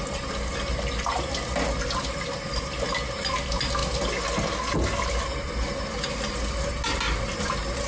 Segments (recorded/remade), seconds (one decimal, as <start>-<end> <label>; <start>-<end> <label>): 0.0-7.9 recorded